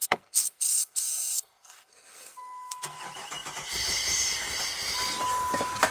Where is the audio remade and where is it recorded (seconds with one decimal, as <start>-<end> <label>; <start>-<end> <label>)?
0.0-3.0 remade; 3.0-5.9 recorded